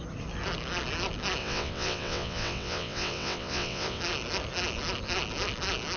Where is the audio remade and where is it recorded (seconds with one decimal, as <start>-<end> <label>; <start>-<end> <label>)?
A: 0.0-1.4 recorded; 1.4-4.0 remade; 4.0-6.0 recorded